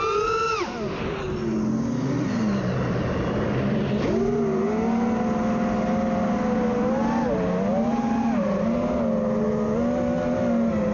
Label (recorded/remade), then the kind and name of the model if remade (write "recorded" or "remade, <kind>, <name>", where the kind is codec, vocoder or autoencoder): recorded